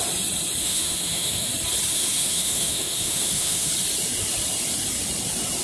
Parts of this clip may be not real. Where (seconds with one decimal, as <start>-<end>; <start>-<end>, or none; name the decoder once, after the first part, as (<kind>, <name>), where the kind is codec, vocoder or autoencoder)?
0.6-1.5 (autoencoder, DAC-VAE); 1.9-3.7